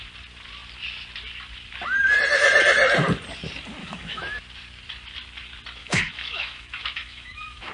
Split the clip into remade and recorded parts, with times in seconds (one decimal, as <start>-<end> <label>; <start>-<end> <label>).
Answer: 0.0-3.8 recorded; 3.8-4.4 remade; 4.4-5.8 recorded; 5.8-7.7 remade